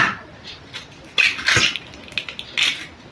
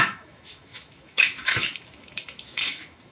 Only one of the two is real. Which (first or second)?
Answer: first